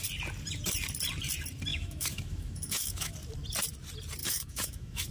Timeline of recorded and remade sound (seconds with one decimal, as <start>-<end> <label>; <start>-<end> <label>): 0.0-1.7 recorded; 1.7-3.1 remade; 3.1-4.2 recorded; 4.2-5.1 remade